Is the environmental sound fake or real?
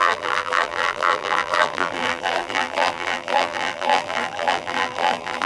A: fake